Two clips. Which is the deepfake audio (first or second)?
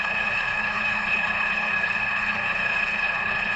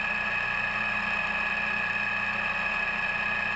first